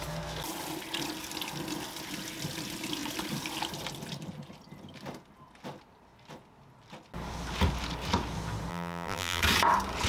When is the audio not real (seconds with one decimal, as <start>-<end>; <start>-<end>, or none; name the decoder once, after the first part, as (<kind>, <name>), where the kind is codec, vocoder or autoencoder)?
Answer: 8.7-9.4 (vocoder, BigVGAN v2)